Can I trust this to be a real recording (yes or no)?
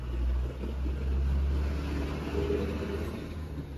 yes